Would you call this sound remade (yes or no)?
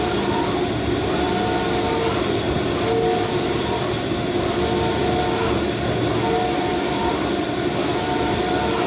no